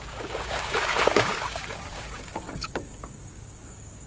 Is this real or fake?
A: fake